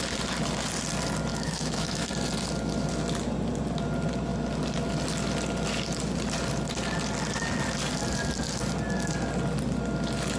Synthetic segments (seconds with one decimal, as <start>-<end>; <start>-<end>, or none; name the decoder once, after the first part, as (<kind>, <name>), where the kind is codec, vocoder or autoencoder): 1.3-2.1 (autoencoder, DAC-VAE)